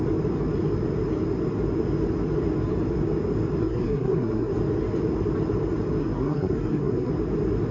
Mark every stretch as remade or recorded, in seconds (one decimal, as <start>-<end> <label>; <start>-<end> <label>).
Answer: 0.0-3.6 recorded; 3.6-4.5 remade; 4.5-6.0 recorded; 6.0-7.1 remade; 7.1-7.7 recorded